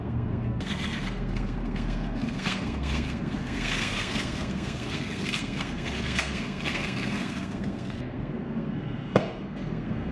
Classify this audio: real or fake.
fake